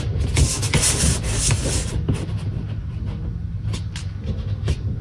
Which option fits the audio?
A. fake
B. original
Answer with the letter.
B